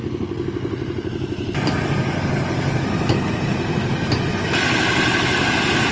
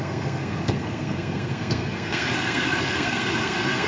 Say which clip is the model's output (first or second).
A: second